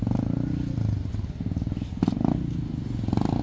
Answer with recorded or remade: recorded